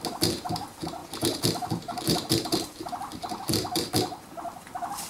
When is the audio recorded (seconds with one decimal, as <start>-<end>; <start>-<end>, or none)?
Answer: 0.0-1.0; 3.9-5.1